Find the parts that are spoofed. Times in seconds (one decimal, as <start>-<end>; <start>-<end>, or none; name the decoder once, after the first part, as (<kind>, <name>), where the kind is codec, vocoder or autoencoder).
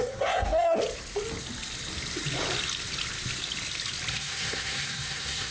0.0-0.8 (codec, SNAC); 4.1-5.5